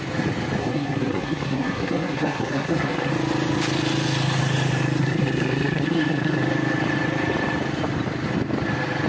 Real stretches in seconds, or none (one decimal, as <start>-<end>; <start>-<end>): 0.0-0.6; 3.1-5.0; 6.4-9.1